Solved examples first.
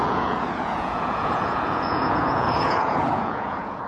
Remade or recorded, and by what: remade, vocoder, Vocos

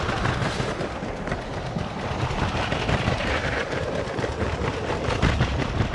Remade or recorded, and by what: remade, vocoder, BigVGAN v2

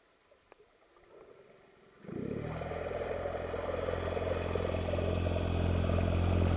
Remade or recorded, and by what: recorded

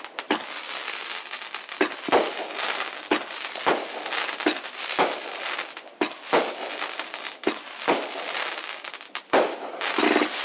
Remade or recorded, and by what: recorded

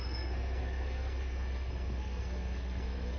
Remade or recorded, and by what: remade, codec, SNAC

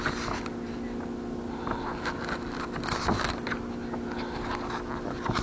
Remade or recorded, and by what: recorded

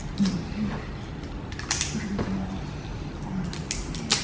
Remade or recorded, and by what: recorded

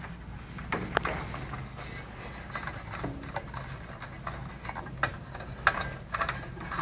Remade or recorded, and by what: recorded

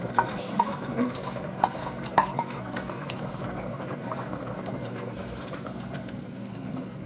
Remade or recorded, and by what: remade, codec, SNAC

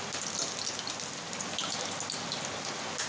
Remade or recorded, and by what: recorded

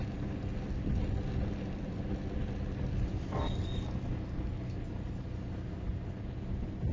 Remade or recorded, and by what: recorded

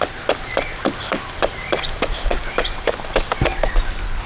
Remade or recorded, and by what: recorded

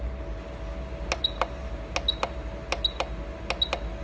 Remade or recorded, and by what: recorded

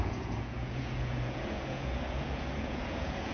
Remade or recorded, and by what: remade, vocoder, Vocos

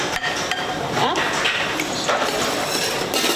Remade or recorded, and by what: remade, vocoder, BigVGAN v2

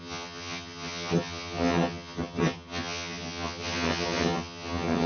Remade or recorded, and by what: remade, vocoder, HiFi-GAN